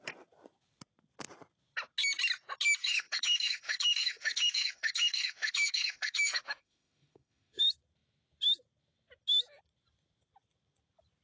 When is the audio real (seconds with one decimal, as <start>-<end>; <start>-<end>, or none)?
0.0-2.8; 7.6-11.2